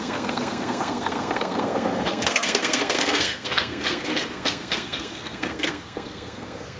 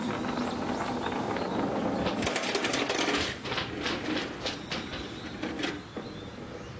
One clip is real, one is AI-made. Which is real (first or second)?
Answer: second